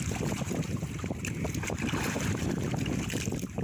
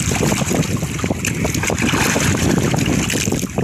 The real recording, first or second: second